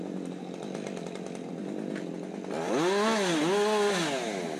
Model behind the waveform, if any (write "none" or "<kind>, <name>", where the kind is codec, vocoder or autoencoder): none